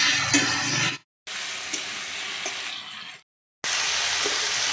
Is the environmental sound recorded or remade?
recorded